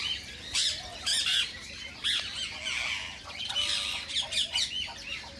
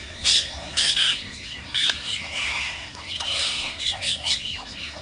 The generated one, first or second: second